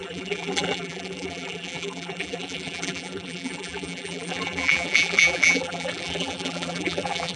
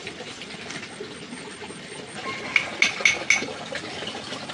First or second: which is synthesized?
first